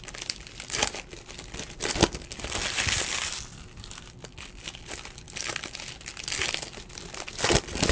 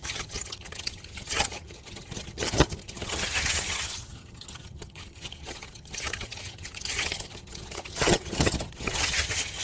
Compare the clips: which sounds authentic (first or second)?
first